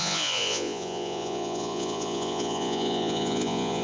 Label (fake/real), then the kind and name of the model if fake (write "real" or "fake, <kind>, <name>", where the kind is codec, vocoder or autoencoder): fake, vocoder, Vocos